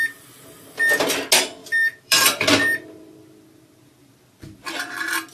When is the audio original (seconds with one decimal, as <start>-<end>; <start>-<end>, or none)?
0.0-1.6; 4.8-5.3